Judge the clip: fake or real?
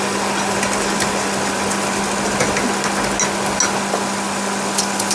real